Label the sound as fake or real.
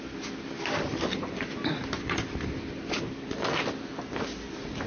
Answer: real